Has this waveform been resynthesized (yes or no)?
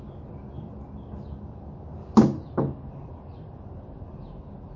no